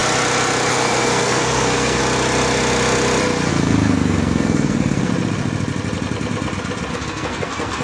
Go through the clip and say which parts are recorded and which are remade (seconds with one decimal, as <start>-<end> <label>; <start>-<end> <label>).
0.0-0.7 recorded; 0.7-2.0 remade; 2.0-3.5 recorded; 3.5-5.1 remade; 5.1-6.9 recorded; 6.9-7.8 remade